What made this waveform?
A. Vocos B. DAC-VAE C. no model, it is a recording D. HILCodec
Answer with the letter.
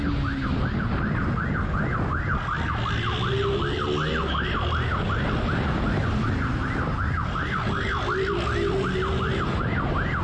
C